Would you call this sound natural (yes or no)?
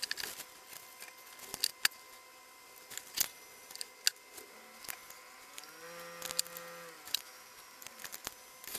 yes